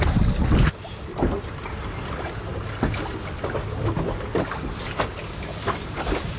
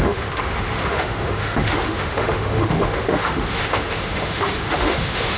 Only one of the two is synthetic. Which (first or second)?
second